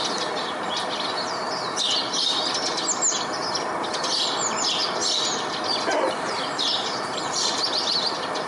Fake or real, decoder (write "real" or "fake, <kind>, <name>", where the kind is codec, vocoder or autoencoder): real